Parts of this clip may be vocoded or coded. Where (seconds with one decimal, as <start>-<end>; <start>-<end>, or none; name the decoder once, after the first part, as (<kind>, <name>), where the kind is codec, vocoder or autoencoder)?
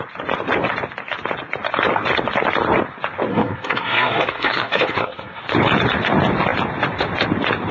3.3-5.4 (codec, SNAC)